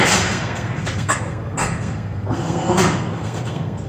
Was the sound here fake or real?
fake